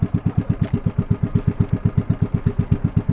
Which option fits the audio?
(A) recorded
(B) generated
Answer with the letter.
A